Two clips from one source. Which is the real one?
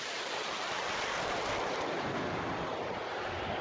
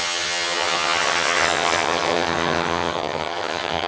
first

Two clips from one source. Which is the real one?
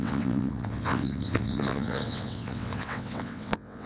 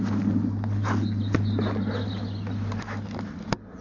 second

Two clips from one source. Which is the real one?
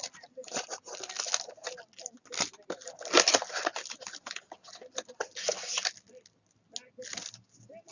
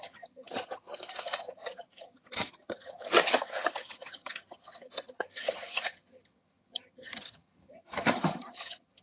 first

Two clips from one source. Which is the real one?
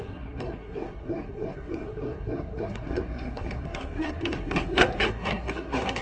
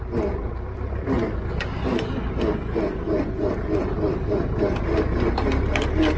second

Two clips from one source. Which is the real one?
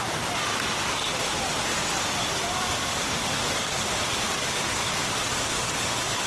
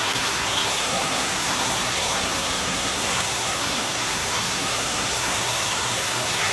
first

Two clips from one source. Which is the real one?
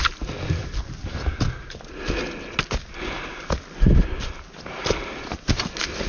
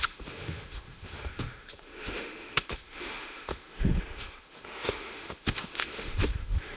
first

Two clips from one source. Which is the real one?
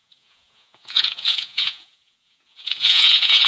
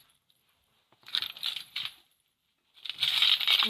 second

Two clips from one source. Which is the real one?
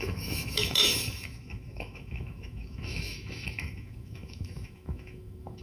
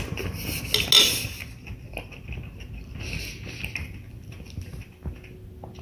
second